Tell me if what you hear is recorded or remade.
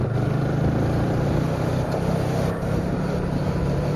remade